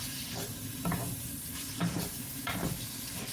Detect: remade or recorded recorded